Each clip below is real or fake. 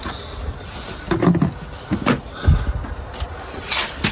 real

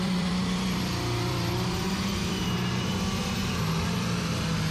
fake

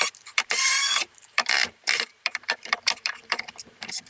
fake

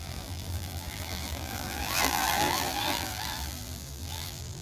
fake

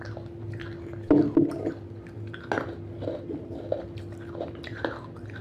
real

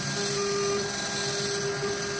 real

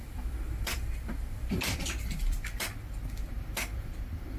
fake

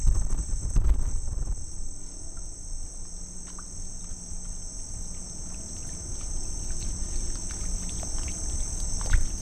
real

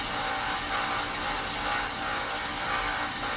real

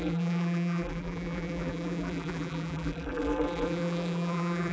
fake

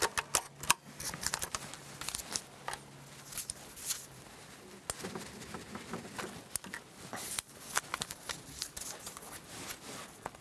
real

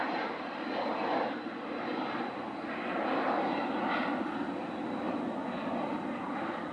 real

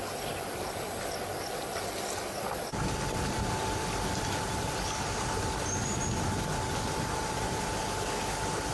real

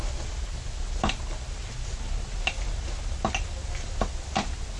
real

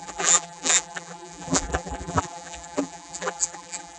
fake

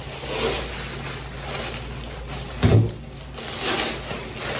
real